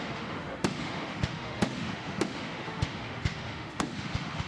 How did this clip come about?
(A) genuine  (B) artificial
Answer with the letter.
B